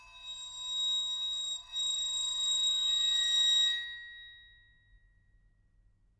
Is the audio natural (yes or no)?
yes